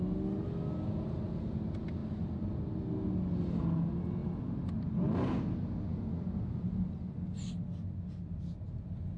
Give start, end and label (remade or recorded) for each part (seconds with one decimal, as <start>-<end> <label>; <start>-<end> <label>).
0.0-9.2 recorded